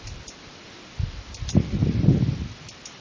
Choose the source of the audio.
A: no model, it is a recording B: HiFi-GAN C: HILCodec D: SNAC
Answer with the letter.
A